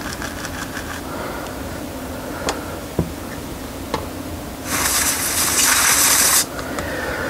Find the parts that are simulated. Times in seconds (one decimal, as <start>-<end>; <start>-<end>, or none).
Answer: none